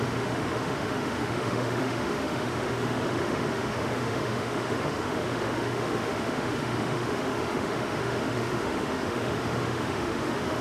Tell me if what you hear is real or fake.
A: fake